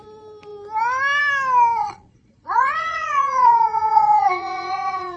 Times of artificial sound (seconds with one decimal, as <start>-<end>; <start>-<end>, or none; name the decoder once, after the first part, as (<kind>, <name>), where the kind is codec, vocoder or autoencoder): 1.8-5.2 (vocoder, Vocos)